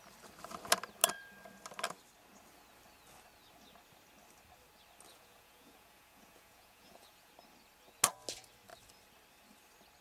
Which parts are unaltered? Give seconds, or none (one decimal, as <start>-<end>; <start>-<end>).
0.0-5.1; 7.3-10.0